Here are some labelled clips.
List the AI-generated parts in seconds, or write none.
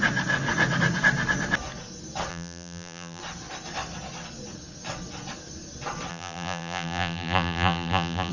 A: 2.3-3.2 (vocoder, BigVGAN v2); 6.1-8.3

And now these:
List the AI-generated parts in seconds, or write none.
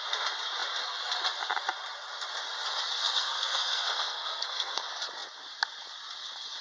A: 3.0-4.8 (codec, SNAC)